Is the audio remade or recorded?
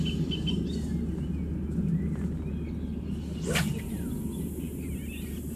recorded